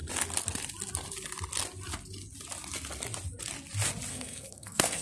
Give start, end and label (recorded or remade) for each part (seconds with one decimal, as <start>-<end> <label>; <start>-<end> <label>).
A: 0.0-4.1 recorded; 4.1-5.0 remade